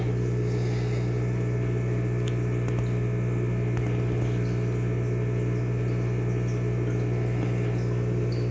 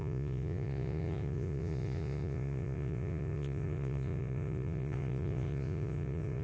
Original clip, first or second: first